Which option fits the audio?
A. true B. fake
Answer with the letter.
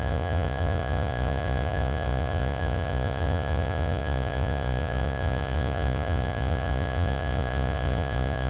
B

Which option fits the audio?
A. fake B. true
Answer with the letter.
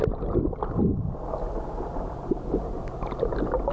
B